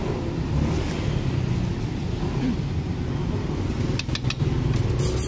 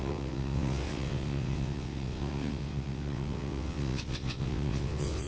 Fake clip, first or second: second